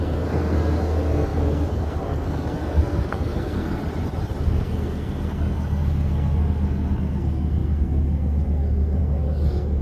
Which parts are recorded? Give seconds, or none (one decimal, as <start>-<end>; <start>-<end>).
3.8-4.4